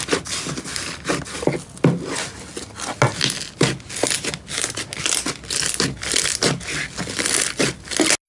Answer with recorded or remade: recorded